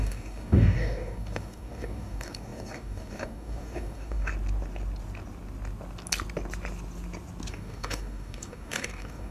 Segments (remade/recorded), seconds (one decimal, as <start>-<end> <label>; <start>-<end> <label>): 0.0-4.3 remade; 4.3-7.5 recorded; 7.5-9.3 remade